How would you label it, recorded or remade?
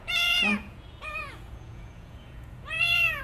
remade